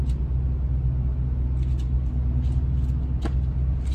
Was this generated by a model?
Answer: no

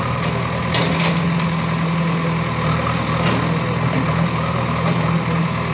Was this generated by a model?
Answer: no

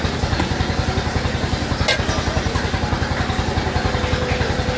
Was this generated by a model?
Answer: no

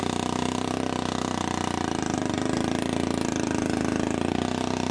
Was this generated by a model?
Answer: no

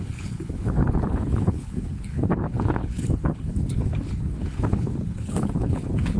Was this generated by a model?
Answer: yes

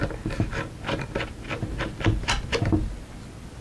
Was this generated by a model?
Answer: no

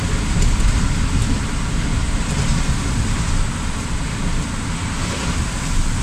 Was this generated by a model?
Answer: no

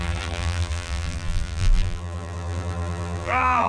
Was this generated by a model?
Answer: yes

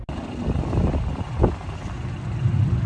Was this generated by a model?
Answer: no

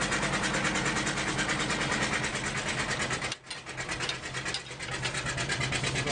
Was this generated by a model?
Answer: no